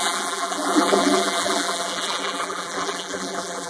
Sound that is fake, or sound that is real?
fake